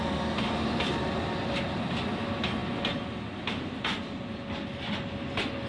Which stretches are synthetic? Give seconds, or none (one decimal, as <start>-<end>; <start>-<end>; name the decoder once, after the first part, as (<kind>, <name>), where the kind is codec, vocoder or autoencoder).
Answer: none